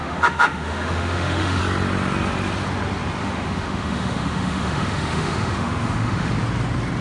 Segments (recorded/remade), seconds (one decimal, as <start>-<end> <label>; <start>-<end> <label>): 0.0-1.6 remade; 1.6-3.2 recorded; 3.2-6.3 remade; 6.3-7.0 recorded